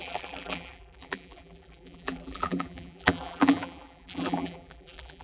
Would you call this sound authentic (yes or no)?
no